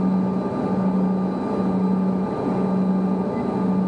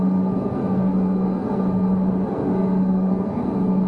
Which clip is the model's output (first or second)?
second